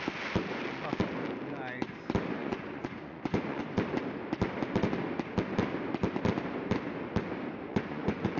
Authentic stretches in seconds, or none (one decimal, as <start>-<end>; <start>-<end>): 0.0-2.4; 3.6-7.7